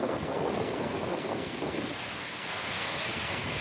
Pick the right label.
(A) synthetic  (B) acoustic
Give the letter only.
A